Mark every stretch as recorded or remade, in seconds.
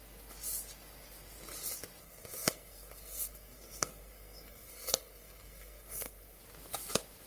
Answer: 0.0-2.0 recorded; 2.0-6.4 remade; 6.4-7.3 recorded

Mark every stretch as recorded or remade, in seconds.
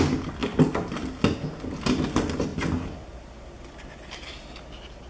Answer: 0.0-5.1 recorded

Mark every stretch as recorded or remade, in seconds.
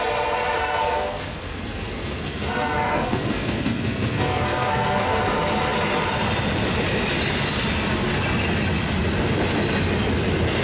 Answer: 0.0-0.6 recorded; 0.6-5.2 remade; 5.2-10.6 recorded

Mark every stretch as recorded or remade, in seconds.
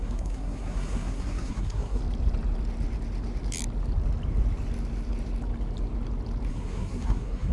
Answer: 0.0-2.0 remade; 2.0-6.5 recorded; 6.5-7.5 remade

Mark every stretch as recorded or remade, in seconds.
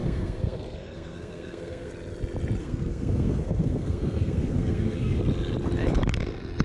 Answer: 0.0-1.9 remade; 1.9-2.6 recorded; 2.6-5.2 remade; 5.2-6.6 recorded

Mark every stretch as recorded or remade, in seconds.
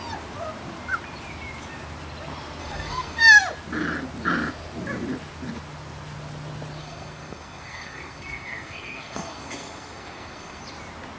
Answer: 0.0-2.6 recorded; 2.6-3.2 remade; 3.2-6.8 recorded; 6.8-10.6 remade; 10.6-11.2 recorded